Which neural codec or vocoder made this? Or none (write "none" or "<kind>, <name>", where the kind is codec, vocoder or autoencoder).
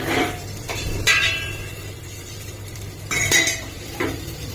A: vocoder, BigVGAN v2